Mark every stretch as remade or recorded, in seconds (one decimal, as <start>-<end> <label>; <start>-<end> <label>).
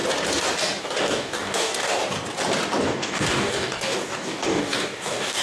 0.0-0.8 recorded; 0.8-2.0 remade; 2.0-2.8 recorded; 2.8-5.4 remade